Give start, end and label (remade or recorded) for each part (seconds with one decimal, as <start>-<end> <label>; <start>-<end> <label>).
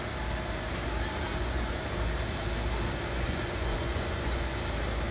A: 0.0-1.3 recorded; 1.3-1.8 remade; 1.8-3.1 recorded; 3.1-4.6 remade; 4.6-5.1 recorded